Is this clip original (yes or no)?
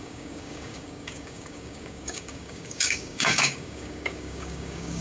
no